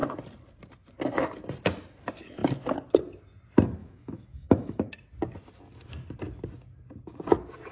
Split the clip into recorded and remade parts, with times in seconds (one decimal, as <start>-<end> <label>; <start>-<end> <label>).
0.0-3.8 recorded; 3.8-4.9 remade; 4.9-7.7 recorded